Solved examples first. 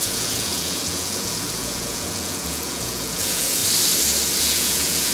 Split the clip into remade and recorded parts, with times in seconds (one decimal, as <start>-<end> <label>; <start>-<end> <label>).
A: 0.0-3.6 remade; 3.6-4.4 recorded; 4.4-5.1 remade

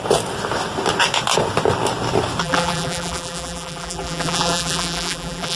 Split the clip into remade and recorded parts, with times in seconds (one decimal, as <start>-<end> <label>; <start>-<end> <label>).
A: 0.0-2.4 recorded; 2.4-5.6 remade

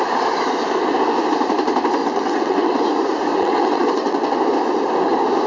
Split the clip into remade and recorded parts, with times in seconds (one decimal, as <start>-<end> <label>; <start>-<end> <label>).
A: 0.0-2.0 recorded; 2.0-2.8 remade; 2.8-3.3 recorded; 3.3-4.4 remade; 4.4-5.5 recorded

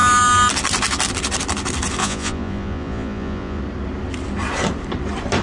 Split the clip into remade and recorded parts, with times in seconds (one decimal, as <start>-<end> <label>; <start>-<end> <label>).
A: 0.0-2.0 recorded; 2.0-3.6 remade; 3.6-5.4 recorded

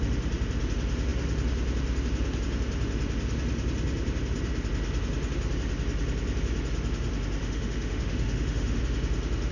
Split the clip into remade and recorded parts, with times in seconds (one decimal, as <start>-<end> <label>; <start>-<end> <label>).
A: 0.0-7.4 recorded; 7.4-8.8 remade; 8.8-9.5 recorded

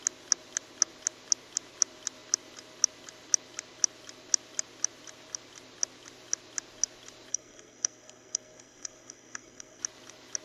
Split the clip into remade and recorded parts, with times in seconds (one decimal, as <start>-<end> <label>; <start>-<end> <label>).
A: 0.0-7.3 recorded; 7.3-9.8 remade; 9.8-10.4 recorded

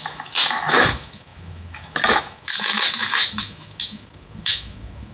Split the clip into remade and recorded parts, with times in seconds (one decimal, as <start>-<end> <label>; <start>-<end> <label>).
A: 0.0-5.1 remade

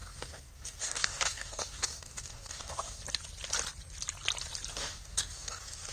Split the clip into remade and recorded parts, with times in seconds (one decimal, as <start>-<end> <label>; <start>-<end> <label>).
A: 0.0-3.0 remade; 3.0-4.7 recorded; 4.7-5.9 remade